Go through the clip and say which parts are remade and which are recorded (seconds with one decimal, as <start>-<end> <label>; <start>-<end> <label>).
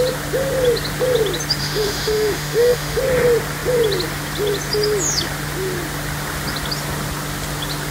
0.0-1.6 recorded; 1.6-3.0 remade; 3.0-7.9 recorded